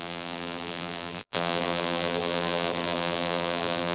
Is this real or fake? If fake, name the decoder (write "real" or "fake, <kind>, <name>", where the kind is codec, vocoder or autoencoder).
fake, vocoder, BigVGAN v2